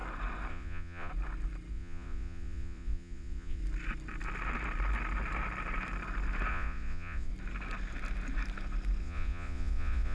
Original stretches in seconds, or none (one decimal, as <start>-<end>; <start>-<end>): 0.0-0.5; 1.1-1.7; 3.6-6.5; 7.3-9.0